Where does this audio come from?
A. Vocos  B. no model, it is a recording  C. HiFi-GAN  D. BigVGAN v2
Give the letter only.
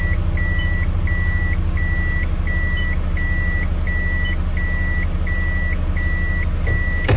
B